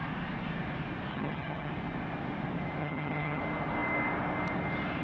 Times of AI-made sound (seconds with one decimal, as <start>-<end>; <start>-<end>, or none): 1.1-1.7; 2.8-3.4